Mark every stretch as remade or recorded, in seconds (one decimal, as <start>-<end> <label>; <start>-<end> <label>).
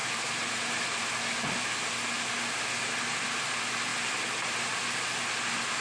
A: 0.0-1.2 remade; 1.2-5.8 recorded